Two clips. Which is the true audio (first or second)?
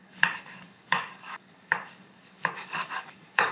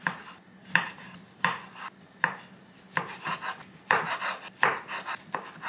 second